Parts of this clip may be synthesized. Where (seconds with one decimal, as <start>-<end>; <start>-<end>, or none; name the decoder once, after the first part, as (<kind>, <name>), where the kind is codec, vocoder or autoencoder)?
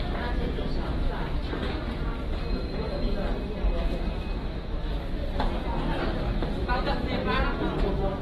none